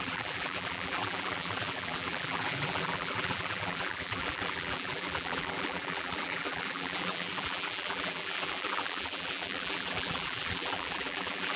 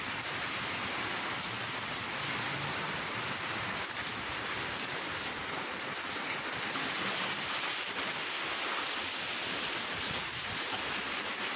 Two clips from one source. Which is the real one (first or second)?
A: second